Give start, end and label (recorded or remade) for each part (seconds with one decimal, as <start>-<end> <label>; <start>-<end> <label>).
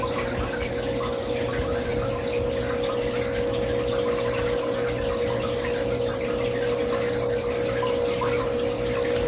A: 0.0-9.3 recorded